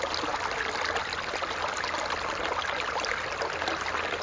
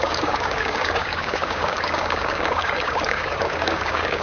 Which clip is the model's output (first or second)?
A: second